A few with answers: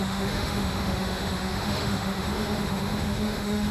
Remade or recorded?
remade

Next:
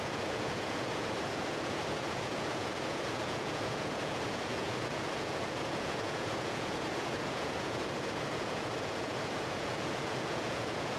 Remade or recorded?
remade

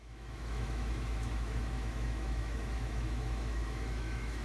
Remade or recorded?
remade